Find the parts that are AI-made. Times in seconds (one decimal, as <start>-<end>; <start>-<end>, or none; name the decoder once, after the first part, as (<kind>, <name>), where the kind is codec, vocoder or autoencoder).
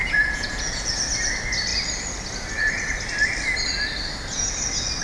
0.0-0.9 (vocoder, Vocos)